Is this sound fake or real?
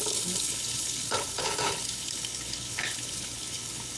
fake